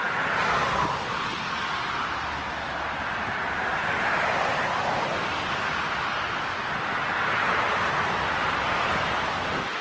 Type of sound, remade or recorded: recorded